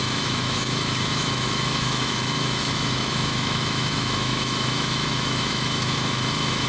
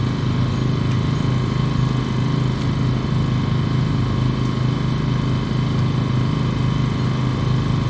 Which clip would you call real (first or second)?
second